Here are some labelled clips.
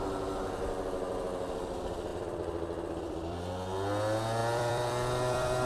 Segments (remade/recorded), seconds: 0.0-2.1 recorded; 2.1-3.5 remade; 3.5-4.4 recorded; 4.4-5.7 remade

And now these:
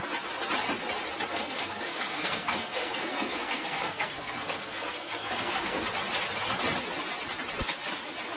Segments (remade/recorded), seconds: 0.0-1.3 recorded; 1.3-5.8 remade; 5.8-8.4 recorded

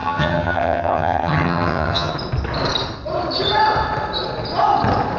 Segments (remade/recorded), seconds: 0.0-2.1 remade; 2.1-5.2 recorded

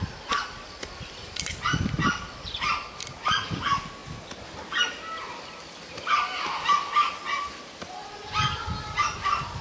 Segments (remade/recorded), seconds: 0.0-9.6 recorded

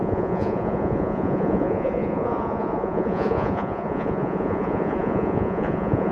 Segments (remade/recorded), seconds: 0.0-6.1 remade

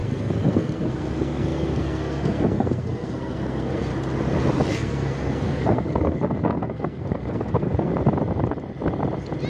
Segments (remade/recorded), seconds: 0.0-3.9 remade; 3.9-4.7 recorded; 4.7-7.9 remade; 7.9-9.5 recorded

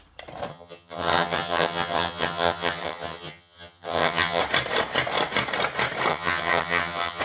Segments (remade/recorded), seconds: 0.0-0.5 recorded; 0.5-4.4 remade; 4.4-6.1 recorded; 6.1-7.2 remade

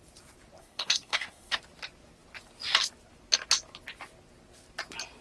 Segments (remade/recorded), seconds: 0.0-0.6 recorded; 0.6-1.6 remade; 1.6-5.2 recorded